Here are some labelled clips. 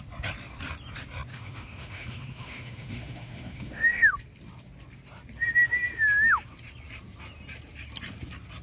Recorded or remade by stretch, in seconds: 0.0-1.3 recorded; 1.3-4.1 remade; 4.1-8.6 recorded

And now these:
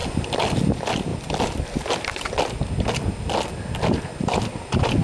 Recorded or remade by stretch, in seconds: 0.0-5.0 recorded

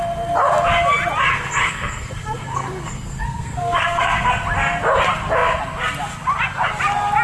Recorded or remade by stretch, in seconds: 0.0-1.3 recorded; 1.3-4.3 remade; 4.3-7.2 recorded

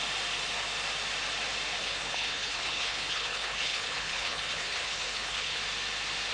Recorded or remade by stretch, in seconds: 0.0-1.8 recorded; 1.8-5.6 remade; 5.6-6.3 recorded